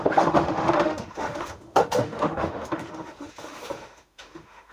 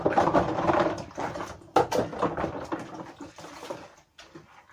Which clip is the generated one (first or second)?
first